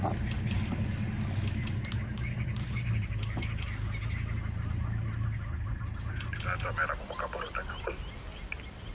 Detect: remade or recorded recorded